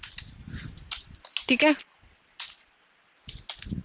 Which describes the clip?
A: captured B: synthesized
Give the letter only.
A